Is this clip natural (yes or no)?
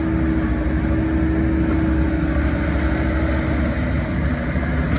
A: yes